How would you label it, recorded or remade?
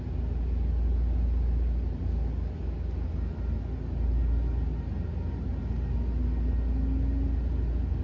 recorded